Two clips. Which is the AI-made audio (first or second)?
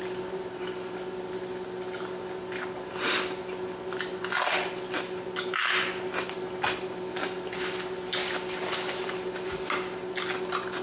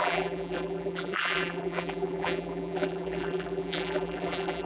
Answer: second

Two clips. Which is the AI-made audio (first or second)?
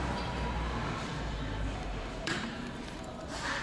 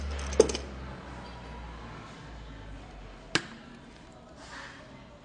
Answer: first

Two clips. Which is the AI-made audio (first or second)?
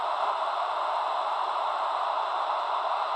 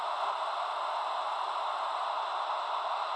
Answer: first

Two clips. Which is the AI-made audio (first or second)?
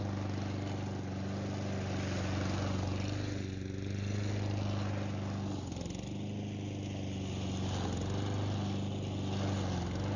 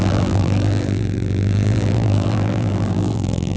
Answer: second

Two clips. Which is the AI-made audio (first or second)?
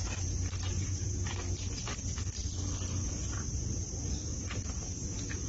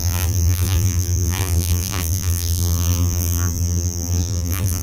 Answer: second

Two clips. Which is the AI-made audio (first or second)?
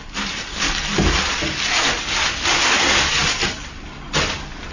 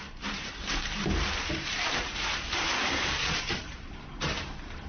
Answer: second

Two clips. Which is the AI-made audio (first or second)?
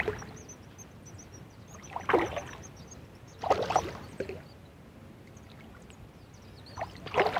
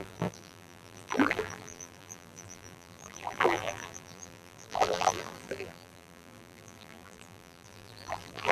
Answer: second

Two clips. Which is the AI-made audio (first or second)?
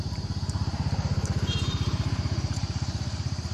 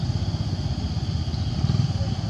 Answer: first